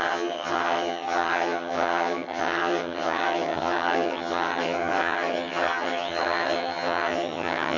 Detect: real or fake fake